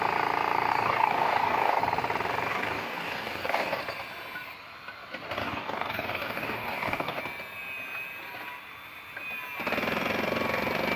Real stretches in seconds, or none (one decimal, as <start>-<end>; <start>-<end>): 0.0-0.7; 1.8-2.5; 3.8-5.4; 7.2-11.0